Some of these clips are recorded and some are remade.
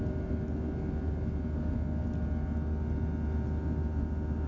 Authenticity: recorded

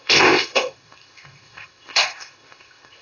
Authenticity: remade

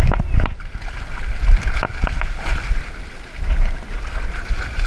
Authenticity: recorded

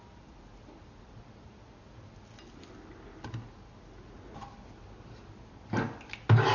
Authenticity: recorded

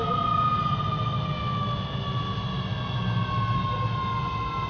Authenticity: recorded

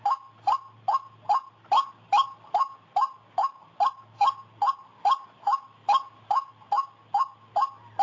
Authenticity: recorded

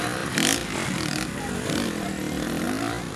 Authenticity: recorded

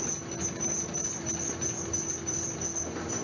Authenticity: recorded